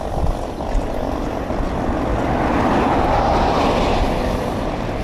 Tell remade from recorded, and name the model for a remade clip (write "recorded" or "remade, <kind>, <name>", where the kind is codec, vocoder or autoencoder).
recorded